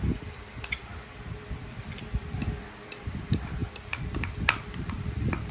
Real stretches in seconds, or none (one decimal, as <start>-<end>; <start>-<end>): 0.9-1.6